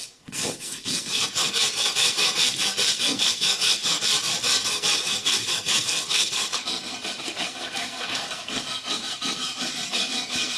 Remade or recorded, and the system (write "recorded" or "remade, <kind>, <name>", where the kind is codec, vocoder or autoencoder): remade, codec, SNAC